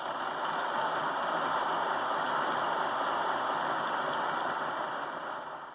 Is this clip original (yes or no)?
yes